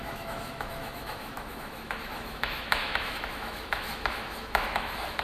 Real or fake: fake